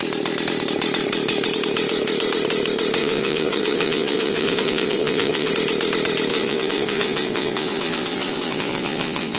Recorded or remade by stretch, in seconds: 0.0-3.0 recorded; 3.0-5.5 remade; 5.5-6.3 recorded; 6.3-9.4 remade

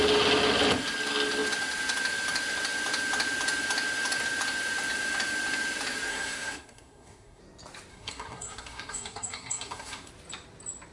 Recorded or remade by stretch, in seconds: 0.0-6.1 recorded; 6.1-7.4 remade; 7.4-7.9 recorded; 7.9-10.1 remade; 10.1-10.9 recorded

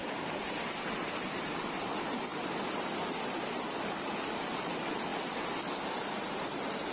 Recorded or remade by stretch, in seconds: 0.0-6.9 recorded

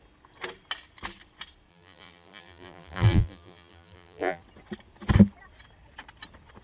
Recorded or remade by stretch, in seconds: 0.0-1.7 recorded; 1.7-4.4 remade; 4.4-6.6 recorded

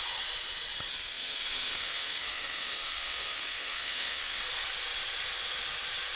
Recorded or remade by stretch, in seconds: 0.0-0.9 recorded; 0.9-4.4 remade; 4.4-6.2 recorded

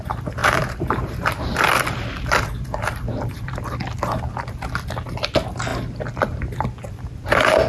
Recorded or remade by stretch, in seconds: 0.0-0.4 recorded; 0.4-3.5 remade; 3.5-7.7 recorded